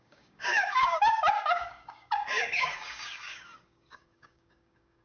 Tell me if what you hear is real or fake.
fake